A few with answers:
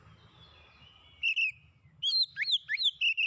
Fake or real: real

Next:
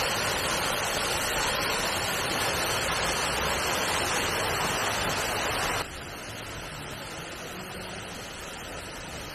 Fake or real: real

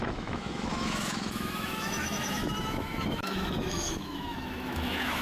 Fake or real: fake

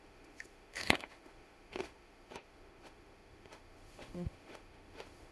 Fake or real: fake